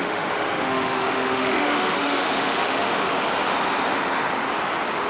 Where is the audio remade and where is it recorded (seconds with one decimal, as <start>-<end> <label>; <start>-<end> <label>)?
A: 0.0-3.1 remade; 3.1-5.1 recorded